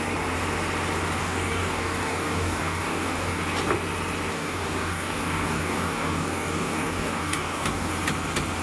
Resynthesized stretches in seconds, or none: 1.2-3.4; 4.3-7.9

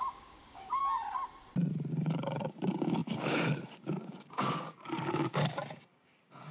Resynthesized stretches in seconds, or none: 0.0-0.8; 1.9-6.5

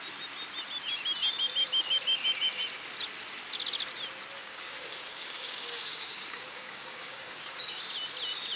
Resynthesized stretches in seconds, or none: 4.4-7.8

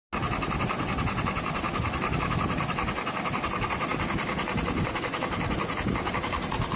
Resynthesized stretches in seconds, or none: none

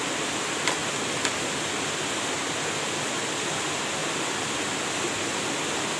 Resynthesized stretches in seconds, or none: none

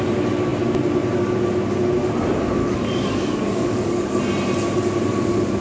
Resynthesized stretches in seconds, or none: 2.6-4.2